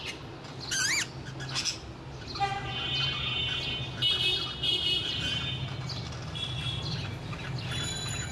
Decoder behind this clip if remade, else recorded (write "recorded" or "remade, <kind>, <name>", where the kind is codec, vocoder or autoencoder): recorded